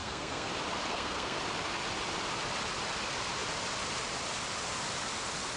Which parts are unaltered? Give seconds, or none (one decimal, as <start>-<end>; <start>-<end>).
0.5-0.9; 1.4-5.6